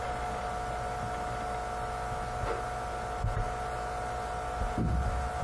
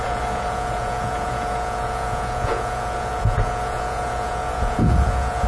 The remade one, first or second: second